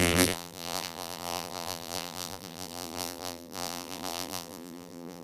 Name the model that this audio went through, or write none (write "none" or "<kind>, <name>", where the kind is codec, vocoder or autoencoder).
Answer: vocoder, BigVGAN v2